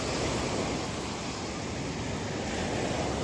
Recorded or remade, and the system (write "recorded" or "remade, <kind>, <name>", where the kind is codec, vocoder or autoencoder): recorded